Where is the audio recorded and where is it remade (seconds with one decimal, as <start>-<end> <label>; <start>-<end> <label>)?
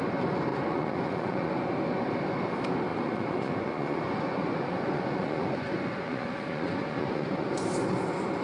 0.0-0.5 recorded; 0.5-1.5 remade; 1.5-2.9 recorded; 2.9-7.6 remade; 7.6-8.4 recorded